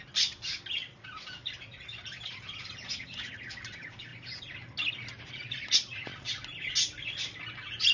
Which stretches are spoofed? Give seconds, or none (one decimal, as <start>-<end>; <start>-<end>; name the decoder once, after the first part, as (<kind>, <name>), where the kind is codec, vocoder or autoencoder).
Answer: none